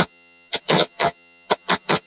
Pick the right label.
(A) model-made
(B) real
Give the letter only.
A